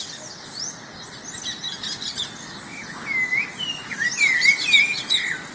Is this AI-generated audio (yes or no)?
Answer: no